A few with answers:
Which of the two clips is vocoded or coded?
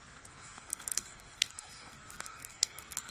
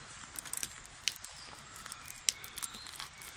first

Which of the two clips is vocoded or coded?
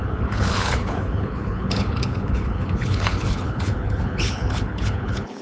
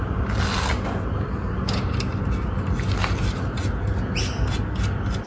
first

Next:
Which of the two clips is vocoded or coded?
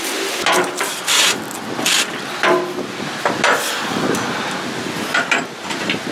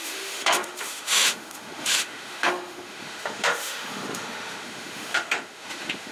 second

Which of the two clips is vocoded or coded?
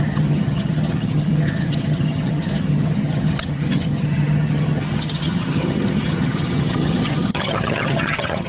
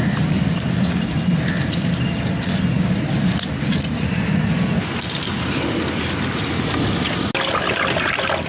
first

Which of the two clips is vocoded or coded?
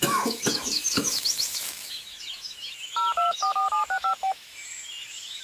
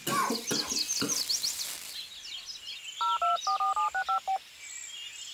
first